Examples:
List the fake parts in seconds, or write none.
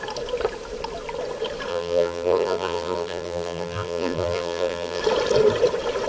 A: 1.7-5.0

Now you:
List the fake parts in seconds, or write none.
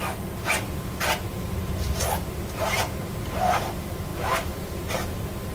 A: none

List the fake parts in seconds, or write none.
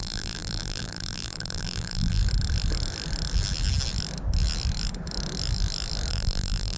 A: 0.0-2.2; 6.1-6.8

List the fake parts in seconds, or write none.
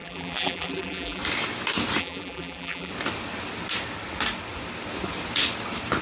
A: 0.0-1.2; 2.0-2.9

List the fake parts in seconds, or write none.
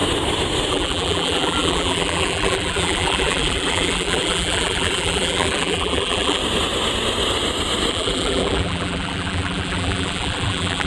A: 0.7-6.4; 7.9-10.9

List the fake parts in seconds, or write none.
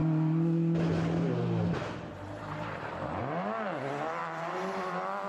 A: none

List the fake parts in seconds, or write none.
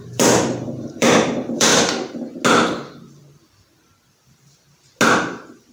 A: 0.0-1.7; 5.1-5.7